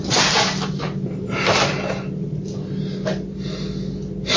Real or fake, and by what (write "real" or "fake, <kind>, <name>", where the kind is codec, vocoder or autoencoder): real